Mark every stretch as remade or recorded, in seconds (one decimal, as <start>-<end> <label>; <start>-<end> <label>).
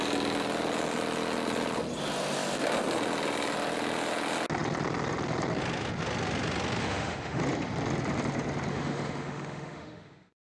0.0-6.8 recorded; 6.8-7.4 remade; 7.4-8.7 recorded; 8.7-10.4 remade